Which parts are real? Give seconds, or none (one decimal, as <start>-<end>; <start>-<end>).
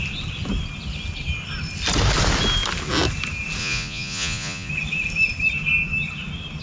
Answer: 0.0-3.6; 4.7-6.6